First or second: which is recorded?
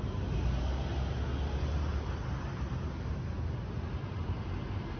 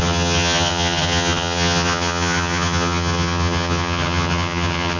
first